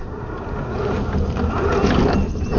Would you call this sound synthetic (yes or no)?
no